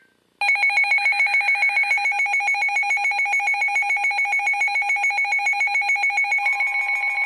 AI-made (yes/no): no